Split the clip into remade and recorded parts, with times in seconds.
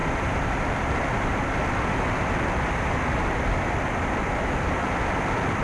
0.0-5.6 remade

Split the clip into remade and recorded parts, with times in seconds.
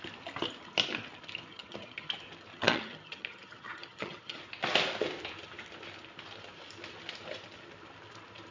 0.0-1.5 recorded; 1.5-2.1 remade; 2.1-2.5 recorded; 2.5-4.4 remade; 4.4-8.5 recorded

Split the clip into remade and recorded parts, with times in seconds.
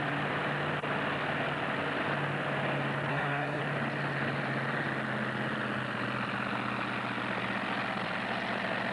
0.0-3.1 recorded; 3.1-3.6 remade; 3.6-8.9 recorded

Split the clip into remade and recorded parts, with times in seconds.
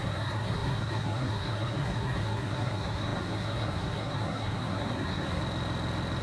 0.0-5.4 remade; 5.4-6.2 recorded